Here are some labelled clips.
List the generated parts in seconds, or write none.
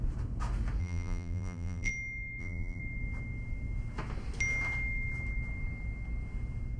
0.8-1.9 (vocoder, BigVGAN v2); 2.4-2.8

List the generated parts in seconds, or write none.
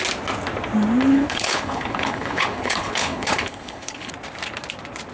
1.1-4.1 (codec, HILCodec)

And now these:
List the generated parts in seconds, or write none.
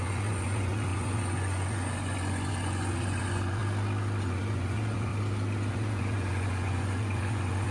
0.0-3.6 (vocoder, Vocos); 4.2-5.1; 5.7-7.7